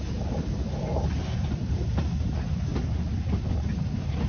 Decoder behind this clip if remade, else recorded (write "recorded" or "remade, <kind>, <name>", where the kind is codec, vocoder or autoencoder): recorded